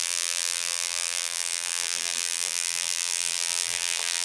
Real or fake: fake